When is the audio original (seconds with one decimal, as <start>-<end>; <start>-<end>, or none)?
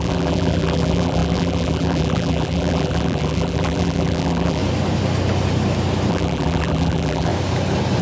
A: 4.6-6.1; 7.3-8.0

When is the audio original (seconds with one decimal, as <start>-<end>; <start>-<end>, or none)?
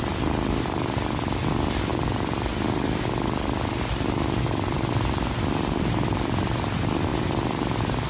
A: 0.0-7.1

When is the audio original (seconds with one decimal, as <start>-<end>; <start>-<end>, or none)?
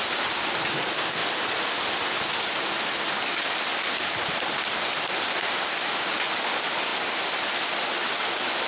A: 0.0-8.7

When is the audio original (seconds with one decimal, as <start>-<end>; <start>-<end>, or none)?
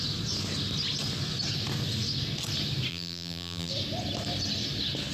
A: 0.0-2.9; 3.7-5.1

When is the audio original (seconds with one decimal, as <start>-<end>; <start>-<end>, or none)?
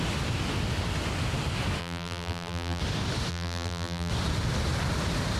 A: 0.0-1.8; 2.8-3.3; 4.1-5.4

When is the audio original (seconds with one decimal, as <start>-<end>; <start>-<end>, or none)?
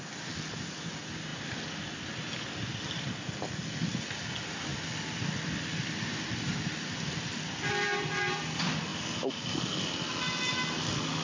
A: 0.0-1.3; 4.0-4.7; 7.3-11.2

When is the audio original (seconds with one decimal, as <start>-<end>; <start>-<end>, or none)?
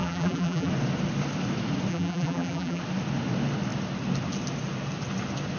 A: 0.7-1.9; 2.8-5.6